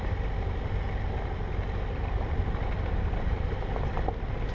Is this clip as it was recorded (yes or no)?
yes